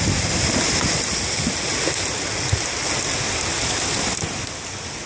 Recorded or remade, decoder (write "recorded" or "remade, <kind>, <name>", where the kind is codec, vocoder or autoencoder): recorded